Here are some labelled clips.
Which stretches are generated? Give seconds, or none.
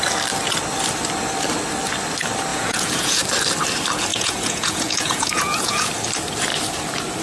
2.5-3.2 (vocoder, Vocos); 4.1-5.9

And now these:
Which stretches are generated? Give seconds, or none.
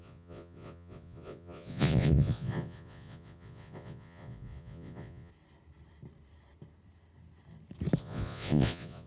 0.0-5.3 (vocoder, Vocos); 8.0-9.1